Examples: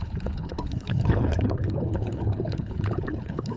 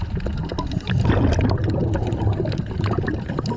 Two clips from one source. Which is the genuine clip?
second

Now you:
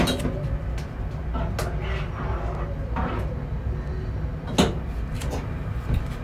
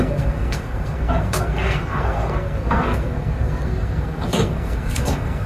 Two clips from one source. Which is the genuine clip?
first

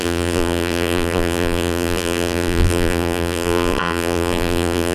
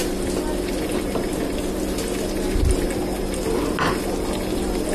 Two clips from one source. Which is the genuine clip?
second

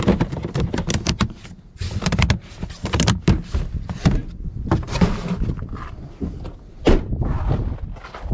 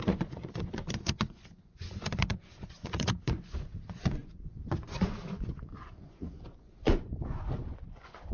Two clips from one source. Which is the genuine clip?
first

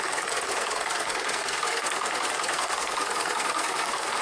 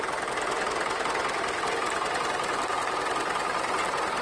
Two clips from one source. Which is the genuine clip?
second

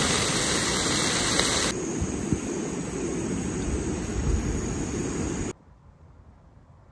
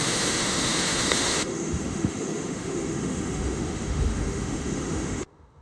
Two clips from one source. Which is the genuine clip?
first